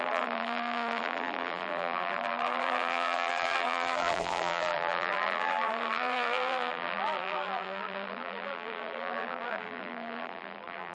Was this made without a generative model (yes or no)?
no